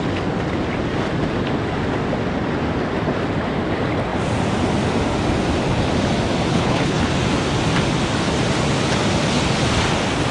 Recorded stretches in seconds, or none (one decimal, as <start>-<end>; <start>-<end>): 0.0-6.5; 7.1-10.3

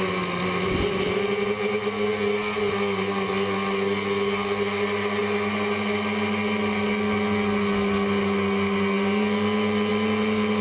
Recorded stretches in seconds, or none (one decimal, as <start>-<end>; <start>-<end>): 0.0-10.6

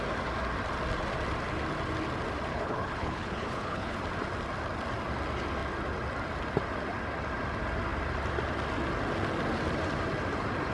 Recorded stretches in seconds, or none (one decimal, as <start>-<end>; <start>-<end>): 0.0-2.5; 4.0-10.7

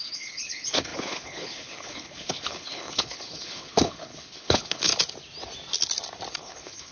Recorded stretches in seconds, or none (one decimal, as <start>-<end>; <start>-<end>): 4.9-6.3

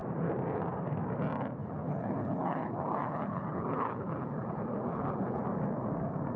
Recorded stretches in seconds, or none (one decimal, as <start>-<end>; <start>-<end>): 0.0-1.6; 5.4-6.4

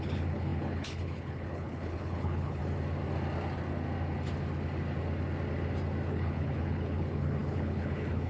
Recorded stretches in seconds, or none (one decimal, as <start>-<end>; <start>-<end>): 2.6-6.1

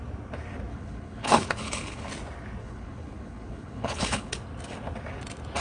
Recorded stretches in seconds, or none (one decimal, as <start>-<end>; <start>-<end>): 0.0-0.7; 2.1-2.6; 4.3-5.6